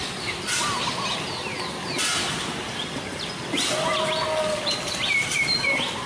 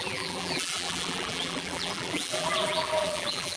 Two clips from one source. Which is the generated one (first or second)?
second